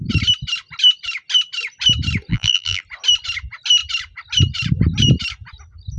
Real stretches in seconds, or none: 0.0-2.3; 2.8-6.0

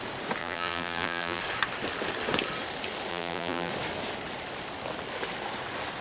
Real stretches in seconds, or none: 0.0-0.4; 1.4-3.1; 3.7-6.0

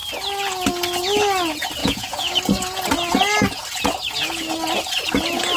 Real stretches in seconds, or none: 0.0-1.8; 2.3-5.6